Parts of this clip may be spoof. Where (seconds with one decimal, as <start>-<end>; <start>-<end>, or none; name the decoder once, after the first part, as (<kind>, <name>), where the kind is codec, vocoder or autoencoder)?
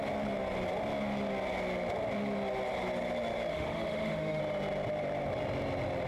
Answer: 3.5-4.4 (autoencoder, DAC-VAE)